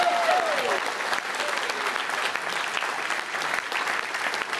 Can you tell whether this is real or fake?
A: fake